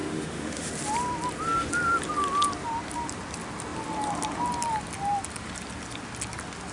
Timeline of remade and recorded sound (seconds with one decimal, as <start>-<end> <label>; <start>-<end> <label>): 0.0-0.7 remade; 0.7-6.7 recorded